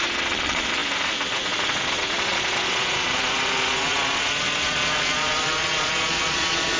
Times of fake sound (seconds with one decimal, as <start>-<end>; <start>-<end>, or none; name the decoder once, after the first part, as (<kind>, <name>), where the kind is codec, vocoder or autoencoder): 0.0-6.8 (vocoder, Vocos)